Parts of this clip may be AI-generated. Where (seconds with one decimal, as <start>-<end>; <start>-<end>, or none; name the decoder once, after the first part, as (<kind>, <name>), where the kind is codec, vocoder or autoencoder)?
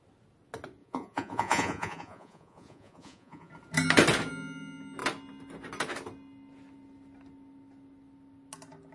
0.8-3.5 (vocoder, Vocos)